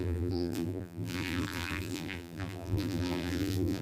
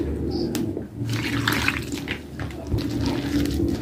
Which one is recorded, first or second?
second